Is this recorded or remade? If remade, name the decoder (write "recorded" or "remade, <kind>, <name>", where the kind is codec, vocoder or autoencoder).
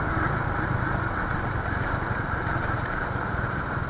recorded